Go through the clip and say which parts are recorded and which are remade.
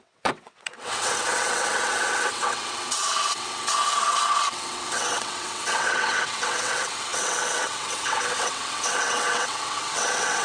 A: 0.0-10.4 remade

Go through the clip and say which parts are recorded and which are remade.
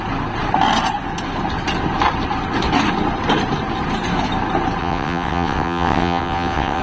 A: 0.0-4.8 recorded; 4.8-6.8 remade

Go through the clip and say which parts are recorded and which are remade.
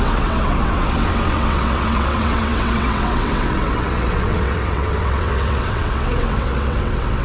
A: 0.0-7.2 remade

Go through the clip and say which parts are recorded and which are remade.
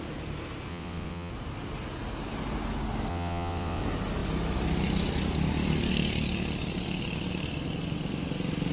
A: 0.0-0.7 recorded; 0.7-1.3 remade; 1.3-3.1 recorded; 3.1-3.8 remade; 3.8-8.7 recorded